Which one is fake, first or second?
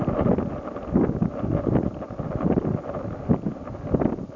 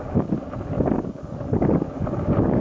second